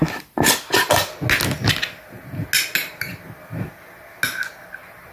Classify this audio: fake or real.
real